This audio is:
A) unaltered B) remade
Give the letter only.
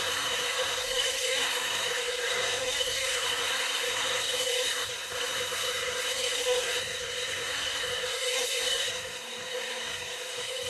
B